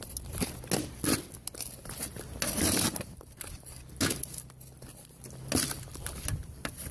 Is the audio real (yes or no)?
yes